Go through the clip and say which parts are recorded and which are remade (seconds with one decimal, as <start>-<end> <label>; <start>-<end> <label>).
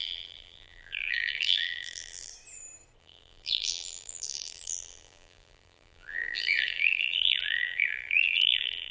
0.0-2.3 remade; 2.3-3.0 recorded; 3.0-8.9 remade